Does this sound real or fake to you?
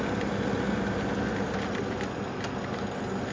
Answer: real